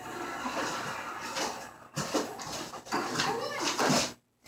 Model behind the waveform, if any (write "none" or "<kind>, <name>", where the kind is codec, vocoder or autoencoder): none